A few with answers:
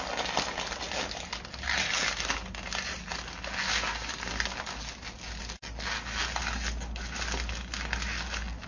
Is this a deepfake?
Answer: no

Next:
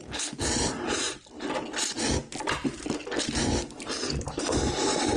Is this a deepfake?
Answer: no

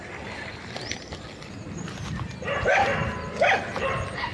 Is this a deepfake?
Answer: no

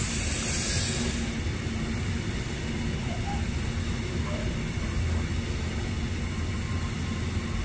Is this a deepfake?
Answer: no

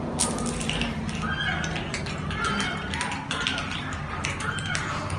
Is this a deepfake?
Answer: no